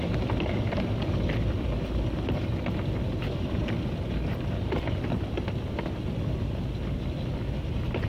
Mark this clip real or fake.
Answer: real